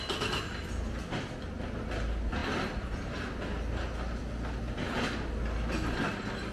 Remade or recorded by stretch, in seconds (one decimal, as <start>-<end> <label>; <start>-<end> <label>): 0.0-6.5 recorded